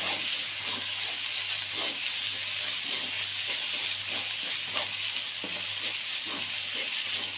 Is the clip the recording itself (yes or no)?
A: yes